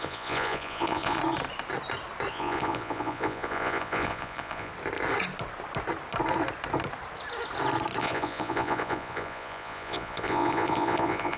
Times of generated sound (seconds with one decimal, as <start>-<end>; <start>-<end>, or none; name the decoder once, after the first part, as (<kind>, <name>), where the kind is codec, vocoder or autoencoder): 0.0-1.2 (vocoder, Vocos); 2.3-4.7; 8.0-11.4